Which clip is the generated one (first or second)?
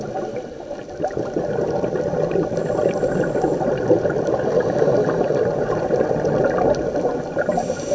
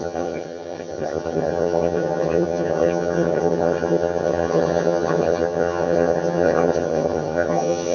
second